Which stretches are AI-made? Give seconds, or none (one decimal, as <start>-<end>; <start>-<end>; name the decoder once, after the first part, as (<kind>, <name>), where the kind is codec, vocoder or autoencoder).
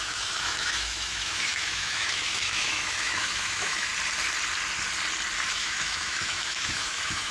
0.0-3.9 (autoencoder, DAC-VAE); 5.5-7.3